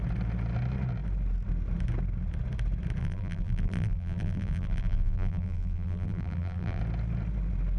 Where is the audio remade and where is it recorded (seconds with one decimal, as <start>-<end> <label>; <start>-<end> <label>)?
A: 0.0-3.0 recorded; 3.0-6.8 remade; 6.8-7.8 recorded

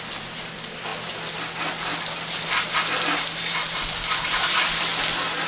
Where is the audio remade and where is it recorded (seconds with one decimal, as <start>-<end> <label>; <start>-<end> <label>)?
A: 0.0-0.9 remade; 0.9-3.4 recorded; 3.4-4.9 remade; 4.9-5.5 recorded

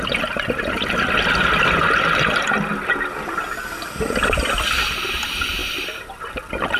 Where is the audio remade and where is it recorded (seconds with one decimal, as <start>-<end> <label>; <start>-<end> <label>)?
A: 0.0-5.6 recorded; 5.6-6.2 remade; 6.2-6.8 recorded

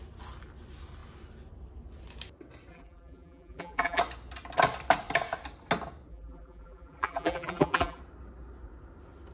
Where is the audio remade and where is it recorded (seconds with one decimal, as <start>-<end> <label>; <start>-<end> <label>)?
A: 0.0-2.7 recorded; 2.7-4.0 remade; 4.0-6.1 recorded; 6.1-8.0 remade; 8.0-9.3 recorded

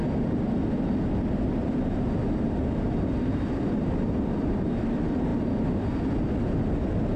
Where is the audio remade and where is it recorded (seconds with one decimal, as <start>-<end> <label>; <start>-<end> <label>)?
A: 0.0-7.2 recorded